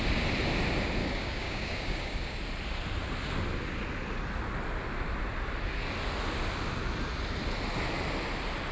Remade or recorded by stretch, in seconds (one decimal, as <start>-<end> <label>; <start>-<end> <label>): 0.0-1.0 recorded; 1.0-2.4 remade; 2.4-8.7 recorded